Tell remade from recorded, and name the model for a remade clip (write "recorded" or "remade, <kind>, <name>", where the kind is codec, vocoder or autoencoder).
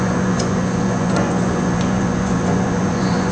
remade, vocoder, Vocos